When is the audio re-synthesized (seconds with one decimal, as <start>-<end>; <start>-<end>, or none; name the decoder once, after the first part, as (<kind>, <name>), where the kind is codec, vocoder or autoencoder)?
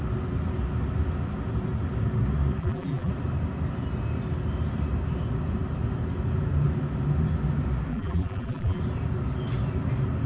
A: 2.6-3.1 (vocoder, BigVGAN v2); 7.9-8.8